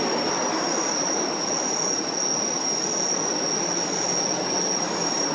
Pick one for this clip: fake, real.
real